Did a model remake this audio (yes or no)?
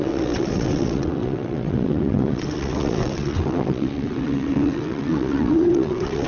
yes